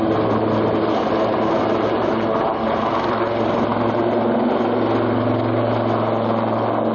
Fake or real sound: real